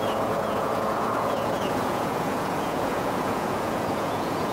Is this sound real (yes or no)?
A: no